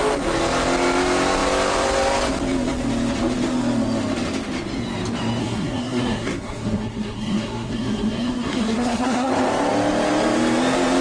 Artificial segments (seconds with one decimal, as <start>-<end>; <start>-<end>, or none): 5.4-9.3